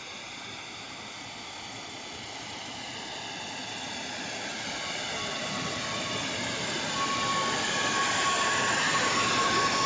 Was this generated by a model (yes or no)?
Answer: no